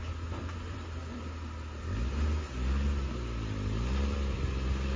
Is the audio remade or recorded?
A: recorded